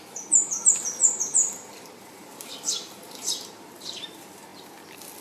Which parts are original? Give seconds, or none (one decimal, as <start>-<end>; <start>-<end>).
0.0-1.0; 4.1-5.2